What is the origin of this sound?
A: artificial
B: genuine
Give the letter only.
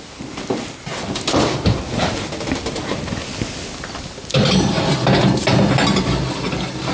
B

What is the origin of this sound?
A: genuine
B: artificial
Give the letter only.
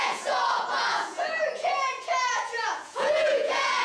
B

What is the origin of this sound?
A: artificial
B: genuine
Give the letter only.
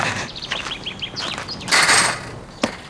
B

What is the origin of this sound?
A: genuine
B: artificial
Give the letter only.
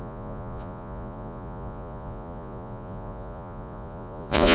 B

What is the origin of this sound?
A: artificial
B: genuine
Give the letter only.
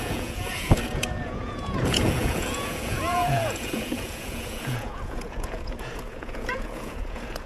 A